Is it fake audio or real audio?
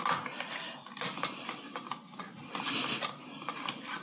real